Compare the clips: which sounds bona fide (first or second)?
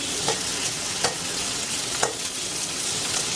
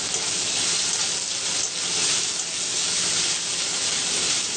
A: second